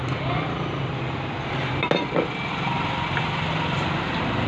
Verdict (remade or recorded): recorded